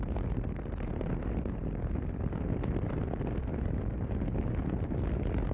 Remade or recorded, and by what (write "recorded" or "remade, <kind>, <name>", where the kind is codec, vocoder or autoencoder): recorded